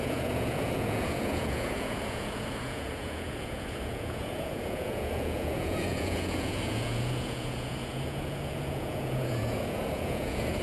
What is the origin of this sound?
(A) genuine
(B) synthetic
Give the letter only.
B